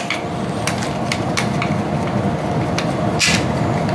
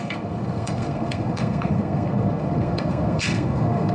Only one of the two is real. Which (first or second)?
first